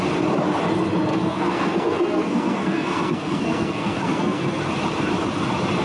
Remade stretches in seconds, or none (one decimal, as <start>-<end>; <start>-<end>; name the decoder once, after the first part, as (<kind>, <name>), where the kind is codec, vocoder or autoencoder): 1.1-4.6 (codec, SNAC)